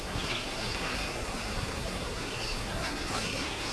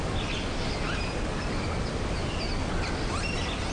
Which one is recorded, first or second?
second